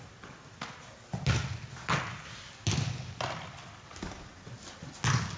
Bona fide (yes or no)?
yes